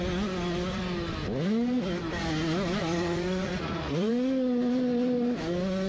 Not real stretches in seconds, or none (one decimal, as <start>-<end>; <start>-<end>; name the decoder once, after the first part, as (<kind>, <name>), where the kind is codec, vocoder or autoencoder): 2.8-4.1 (vocoder, Vocos)